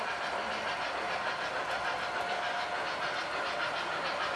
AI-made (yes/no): no